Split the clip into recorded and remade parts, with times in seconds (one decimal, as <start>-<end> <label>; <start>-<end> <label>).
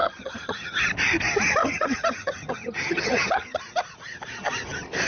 0.0-0.8 remade; 0.8-1.6 recorded; 1.6-3.6 remade; 3.6-5.1 recorded